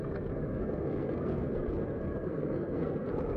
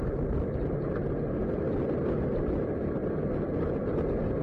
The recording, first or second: second